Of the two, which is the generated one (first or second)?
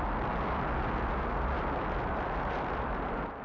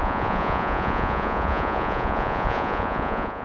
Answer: second